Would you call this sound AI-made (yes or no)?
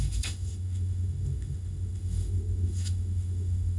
yes